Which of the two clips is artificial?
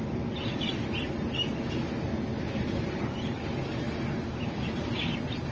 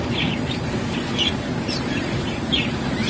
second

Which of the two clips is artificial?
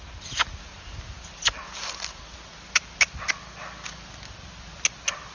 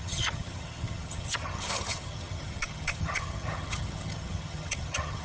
second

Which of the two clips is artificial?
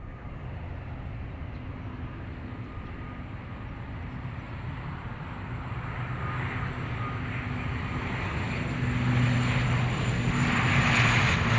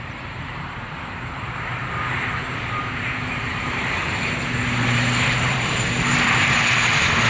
second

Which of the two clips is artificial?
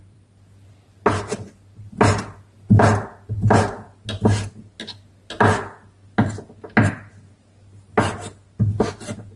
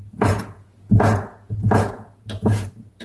second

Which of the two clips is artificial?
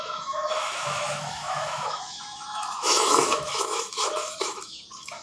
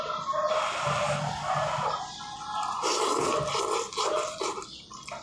first